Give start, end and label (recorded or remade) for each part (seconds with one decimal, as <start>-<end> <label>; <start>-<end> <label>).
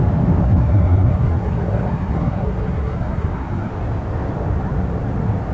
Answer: 0.0-0.4 recorded; 0.4-3.7 remade; 3.7-5.5 recorded